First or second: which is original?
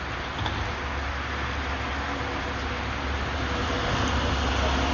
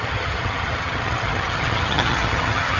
first